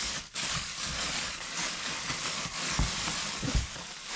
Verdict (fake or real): fake